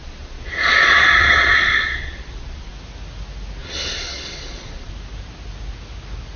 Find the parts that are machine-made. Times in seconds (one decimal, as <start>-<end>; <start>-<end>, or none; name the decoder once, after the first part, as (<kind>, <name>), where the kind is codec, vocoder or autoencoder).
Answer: 0.0-2.7 (vocoder, Vocos); 3.6-4.9